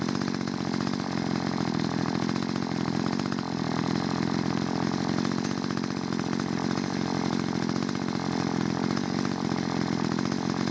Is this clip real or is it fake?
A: real